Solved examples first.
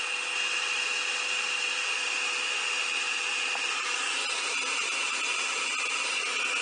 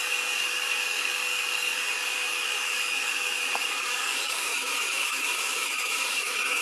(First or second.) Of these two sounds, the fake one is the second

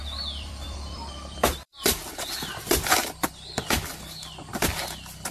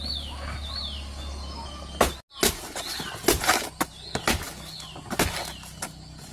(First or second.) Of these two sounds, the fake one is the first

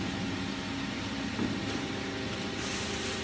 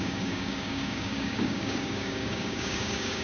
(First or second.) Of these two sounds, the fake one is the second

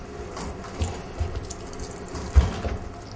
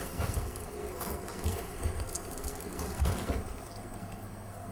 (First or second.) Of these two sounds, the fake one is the second